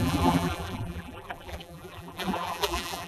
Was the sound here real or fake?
fake